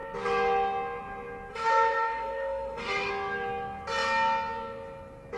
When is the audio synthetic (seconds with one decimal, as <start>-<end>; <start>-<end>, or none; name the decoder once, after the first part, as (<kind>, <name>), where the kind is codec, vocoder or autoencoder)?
1.5-3.1 (autoencoder, DAC-VAE)

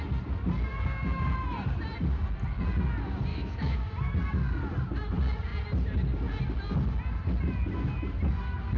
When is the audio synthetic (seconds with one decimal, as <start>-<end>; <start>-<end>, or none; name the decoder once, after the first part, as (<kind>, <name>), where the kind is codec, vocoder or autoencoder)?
3.3-3.9 (autoencoder, DAC-VAE)

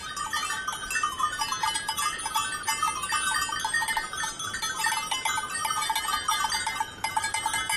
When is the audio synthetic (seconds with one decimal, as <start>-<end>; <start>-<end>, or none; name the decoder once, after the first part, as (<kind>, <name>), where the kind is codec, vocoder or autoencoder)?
none

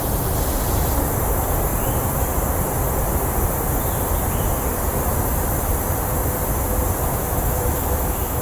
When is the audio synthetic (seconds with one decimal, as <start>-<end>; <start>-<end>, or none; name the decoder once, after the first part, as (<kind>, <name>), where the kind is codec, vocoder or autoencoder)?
7.1-8.4 (autoencoder, DAC-VAE)